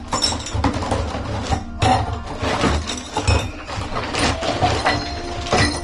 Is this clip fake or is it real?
real